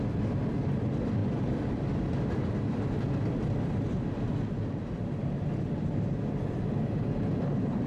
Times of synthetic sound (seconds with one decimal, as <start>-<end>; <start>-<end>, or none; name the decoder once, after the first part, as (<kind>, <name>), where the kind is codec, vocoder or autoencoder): 1.2-2.9 (vocoder, BigVGAN v2)